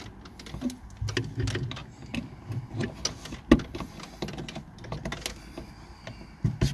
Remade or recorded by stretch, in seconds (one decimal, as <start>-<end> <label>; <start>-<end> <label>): 0.0-6.7 recorded